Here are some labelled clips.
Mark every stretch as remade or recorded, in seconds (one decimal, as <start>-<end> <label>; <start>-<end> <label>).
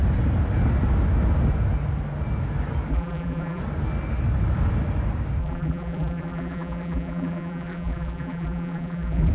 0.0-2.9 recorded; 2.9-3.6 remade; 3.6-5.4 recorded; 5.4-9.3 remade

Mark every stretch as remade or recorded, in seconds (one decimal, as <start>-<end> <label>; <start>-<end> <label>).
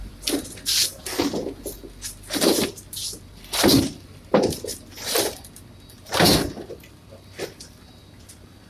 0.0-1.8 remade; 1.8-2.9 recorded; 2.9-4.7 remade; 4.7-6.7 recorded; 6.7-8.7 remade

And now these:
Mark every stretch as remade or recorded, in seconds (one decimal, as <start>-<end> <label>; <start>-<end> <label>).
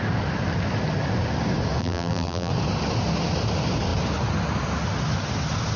0.0-1.8 recorded; 1.8-2.5 remade; 2.5-5.8 recorded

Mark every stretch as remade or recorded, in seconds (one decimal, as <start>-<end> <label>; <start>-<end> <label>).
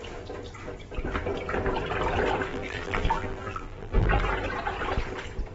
0.0-2.5 recorded; 2.5-4.2 remade; 4.2-5.5 recorded